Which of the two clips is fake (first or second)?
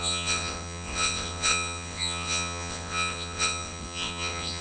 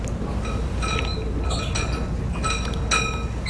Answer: first